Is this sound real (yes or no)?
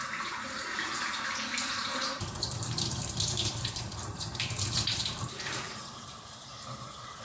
no